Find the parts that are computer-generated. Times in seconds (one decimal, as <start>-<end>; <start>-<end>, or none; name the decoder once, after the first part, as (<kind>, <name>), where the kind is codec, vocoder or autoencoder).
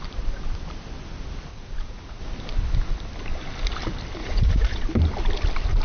1.5-2.2 (vocoder, Vocos); 4.2-4.8